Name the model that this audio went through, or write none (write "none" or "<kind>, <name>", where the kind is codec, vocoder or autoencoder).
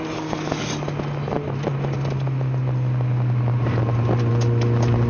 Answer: none